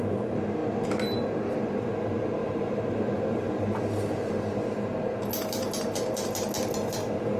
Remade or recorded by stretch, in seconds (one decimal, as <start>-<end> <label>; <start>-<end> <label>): 0.0-2.4 recorded; 2.4-3.8 remade; 3.8-7.4 recorded